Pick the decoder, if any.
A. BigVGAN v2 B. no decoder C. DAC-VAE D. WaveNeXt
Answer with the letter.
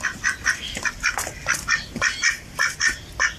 B